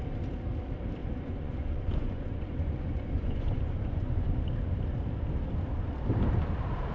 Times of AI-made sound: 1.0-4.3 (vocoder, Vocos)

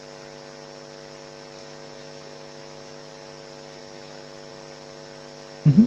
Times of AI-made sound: 1.6-3.1 (autoencoder, DAC-VAE); 3.8-4.5

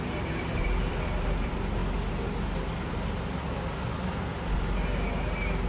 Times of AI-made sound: 0.0-1.8 (vocoder, BigVGAN v2); 5.2-5.7

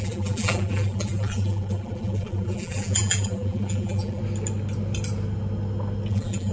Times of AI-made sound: 0.0-4.2 (vocoder, BigVGAN v2); 6.1-6.5

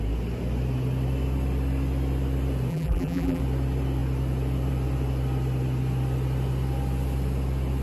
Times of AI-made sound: 2.7-3.4 (vocoder, BigVGAN v2)

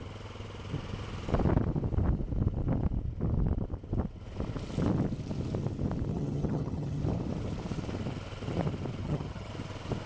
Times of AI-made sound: 6.1-7.0 (vocoder, HiFi-GAN); 9.0-9.5

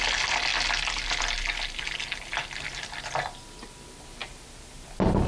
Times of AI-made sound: none